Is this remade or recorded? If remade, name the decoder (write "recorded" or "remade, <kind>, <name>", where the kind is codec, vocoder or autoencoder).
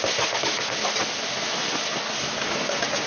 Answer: recorded